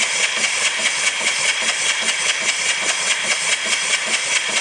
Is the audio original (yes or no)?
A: yes